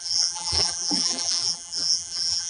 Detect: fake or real fake